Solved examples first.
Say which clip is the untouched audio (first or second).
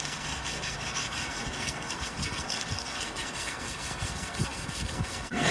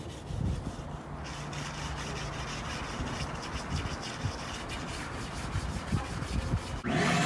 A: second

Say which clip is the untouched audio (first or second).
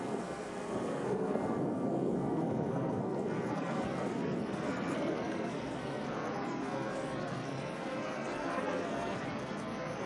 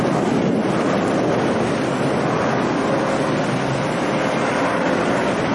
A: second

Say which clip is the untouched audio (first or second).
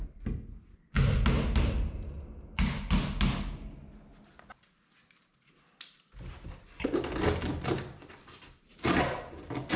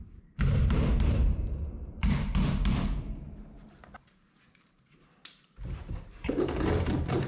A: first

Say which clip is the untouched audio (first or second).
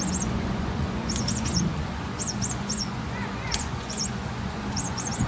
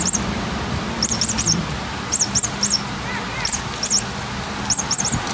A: second